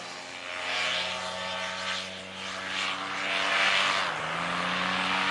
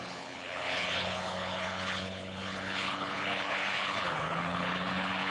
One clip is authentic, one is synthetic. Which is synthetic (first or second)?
second